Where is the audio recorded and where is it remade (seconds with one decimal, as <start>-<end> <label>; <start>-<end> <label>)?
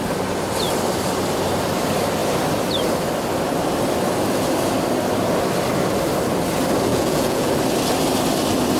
0.0-6.9 recorded; 6.9-7.5 remade; 7.5-8.8 recorded